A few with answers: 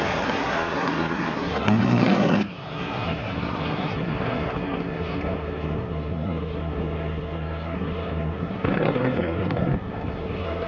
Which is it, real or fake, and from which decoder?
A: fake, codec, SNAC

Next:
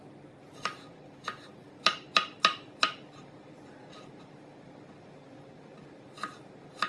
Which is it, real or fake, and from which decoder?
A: fake, vocoder, BigVGAN v2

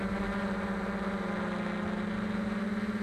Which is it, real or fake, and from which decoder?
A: real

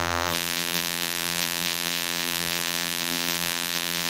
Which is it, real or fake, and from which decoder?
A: fake, vocoder, BigVGAN v2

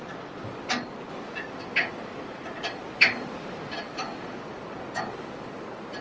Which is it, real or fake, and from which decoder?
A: real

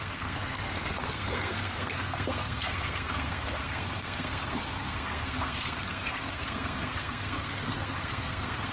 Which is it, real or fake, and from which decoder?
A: fake, codec, SNAC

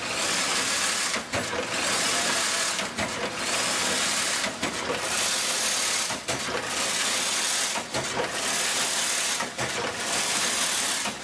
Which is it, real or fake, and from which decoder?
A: real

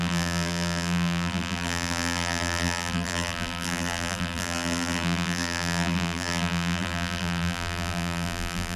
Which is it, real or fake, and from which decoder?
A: fake, vocoder, BigVGAN v2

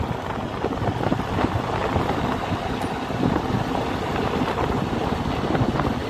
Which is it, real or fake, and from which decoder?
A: real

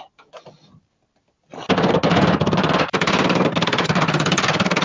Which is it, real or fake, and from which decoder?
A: real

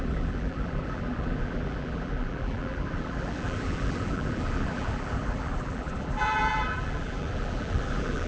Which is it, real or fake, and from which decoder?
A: fake, vocoder, BigVGAN v2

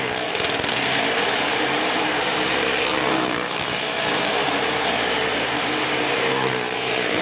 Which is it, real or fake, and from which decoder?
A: fake, vocoder, BigVGAN v2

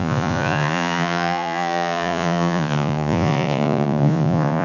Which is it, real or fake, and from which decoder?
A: fake, vocoder, Vocos